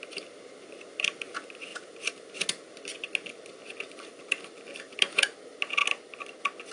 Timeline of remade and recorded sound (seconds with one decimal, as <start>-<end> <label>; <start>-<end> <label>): 0.0-6.7 recorded